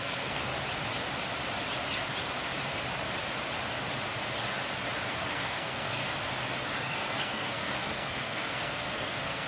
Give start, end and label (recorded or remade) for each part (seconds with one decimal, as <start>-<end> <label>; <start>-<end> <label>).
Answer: 0.0-0.5 remade; 0.5-5.1 recorded; 5.1-6.0 remade; 6.0-6.8 recorded; 6.8-9.5 remade

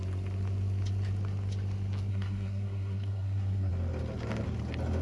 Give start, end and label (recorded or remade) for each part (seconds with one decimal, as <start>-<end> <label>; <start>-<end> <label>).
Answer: 0.0-2.1 recorded; 2.1-3.7 remade; 3.7-5.0 recorded